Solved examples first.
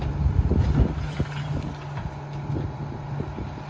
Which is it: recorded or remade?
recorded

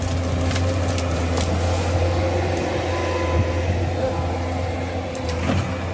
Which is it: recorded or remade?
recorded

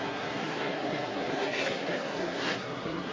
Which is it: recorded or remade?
remade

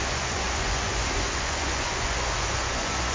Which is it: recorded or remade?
remade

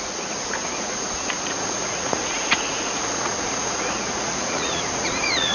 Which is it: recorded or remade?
remade